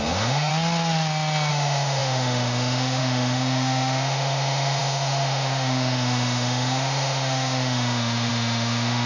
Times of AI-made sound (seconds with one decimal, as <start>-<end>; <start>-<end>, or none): 0.0-0.5; 1.5-9.1